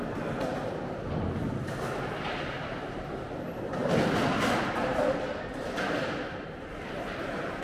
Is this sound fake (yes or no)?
no